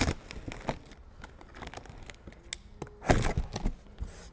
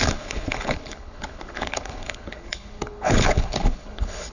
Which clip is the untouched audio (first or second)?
first